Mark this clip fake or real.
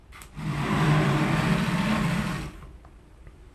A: fake